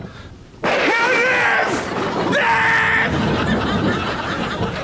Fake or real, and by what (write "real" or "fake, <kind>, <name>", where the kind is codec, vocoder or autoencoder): real